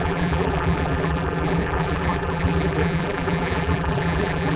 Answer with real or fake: fake